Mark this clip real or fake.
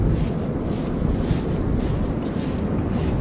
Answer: real